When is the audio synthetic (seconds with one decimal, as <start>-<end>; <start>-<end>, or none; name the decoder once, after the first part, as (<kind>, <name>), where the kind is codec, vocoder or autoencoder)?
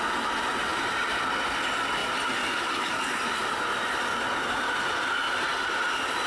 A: none